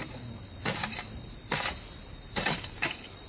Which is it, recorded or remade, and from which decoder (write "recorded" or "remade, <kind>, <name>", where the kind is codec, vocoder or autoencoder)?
remade, vocoder, BigVGAN v2